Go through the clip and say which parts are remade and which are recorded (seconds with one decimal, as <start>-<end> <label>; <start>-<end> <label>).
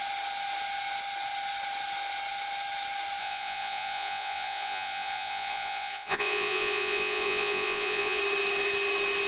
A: 0.0-3.2 recorded; 3.2-8.2 remade; 8.2-9.3 recorded